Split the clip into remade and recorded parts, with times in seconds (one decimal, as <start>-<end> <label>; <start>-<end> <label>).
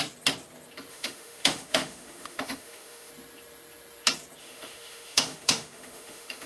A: 0.0-0.9 recorded; 0.9-3.1 remade; 3.1-4.4 recorded; 4.4-6.5 remade